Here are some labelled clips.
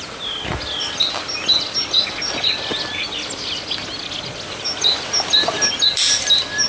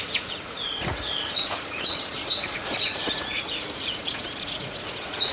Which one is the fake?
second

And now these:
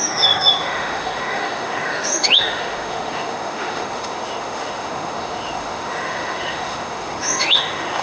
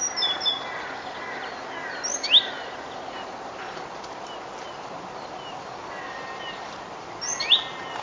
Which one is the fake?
first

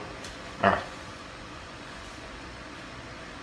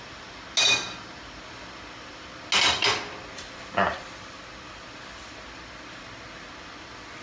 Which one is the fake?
first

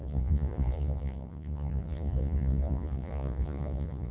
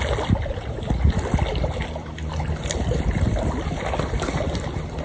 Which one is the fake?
first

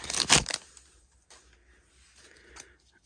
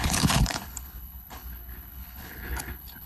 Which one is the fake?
second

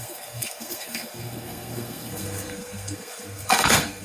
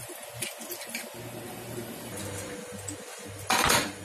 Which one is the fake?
first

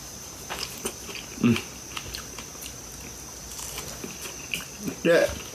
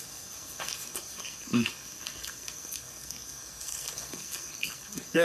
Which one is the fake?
second